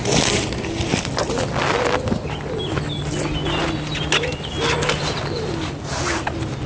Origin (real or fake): real